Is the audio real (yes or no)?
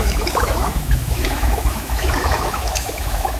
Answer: no